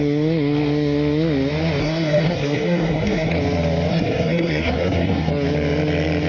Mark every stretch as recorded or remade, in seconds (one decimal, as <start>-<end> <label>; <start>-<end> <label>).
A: 0.0-1.8 recorded; 1.8-3.3 remade; 3.3-3.9 recorded; 3.9-5.3 remade; 5.3-6.3 recorded